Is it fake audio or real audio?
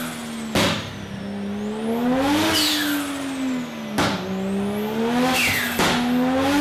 real